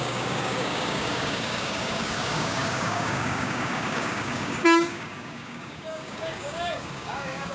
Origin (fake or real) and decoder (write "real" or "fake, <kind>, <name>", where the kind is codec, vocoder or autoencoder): fake, codec, DAC